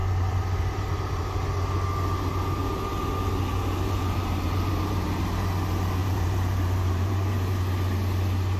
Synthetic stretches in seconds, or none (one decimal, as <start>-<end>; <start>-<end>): 0.0-1.3; 3.5-5.5; 6.0-7.6